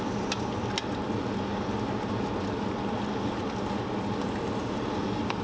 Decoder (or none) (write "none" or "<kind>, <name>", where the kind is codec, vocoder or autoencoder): none